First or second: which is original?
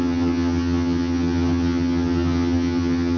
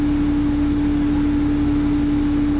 second